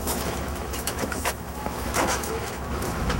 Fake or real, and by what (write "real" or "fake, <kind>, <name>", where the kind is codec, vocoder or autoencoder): fake, autoencoder, DAC-VAE